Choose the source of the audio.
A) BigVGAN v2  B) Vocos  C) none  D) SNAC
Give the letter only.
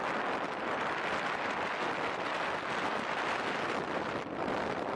C